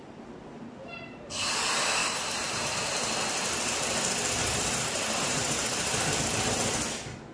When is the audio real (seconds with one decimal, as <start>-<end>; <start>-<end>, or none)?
0.0-2.0; 3.0-4.4; 6.1-7.3